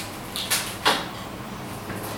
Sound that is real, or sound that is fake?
real